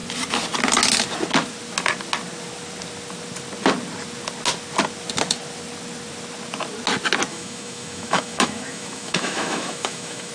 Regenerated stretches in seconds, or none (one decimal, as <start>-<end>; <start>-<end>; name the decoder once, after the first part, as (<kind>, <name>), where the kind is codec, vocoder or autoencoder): 7.3-10.3 (autoencoder, DAC-VAE)